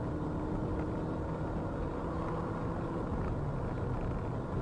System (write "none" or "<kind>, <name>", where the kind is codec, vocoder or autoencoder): none